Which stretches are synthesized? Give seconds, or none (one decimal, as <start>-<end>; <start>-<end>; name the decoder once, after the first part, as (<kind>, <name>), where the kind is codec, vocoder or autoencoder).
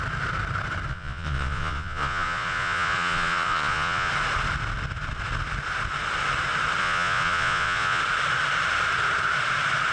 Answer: 0.9-4.1 (vocoder, Vocos); 6.8-8.0